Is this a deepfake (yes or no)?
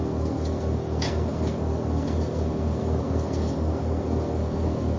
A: yes